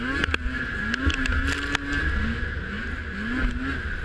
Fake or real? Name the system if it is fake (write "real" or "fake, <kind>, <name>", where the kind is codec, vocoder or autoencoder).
real